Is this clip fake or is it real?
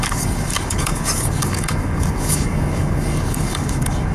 fake